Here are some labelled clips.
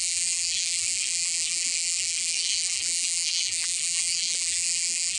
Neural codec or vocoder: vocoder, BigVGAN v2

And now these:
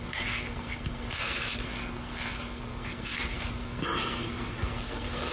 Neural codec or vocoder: codec, SNAC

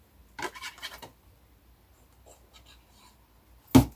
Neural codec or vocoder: none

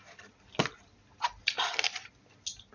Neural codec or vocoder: none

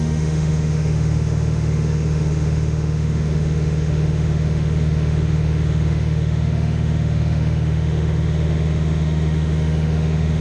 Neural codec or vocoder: autoencoder, DAC-VAE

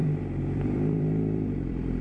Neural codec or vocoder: vocoder, BigVGAN v2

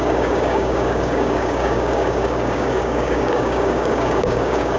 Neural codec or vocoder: codec, DAC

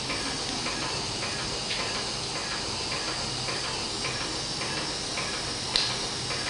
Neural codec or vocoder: none